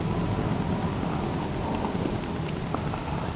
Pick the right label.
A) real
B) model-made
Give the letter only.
A